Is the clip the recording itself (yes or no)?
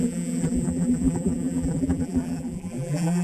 no